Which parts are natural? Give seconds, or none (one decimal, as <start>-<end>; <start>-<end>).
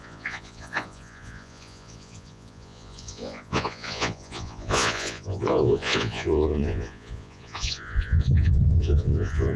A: none